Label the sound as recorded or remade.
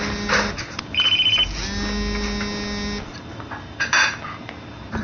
recorded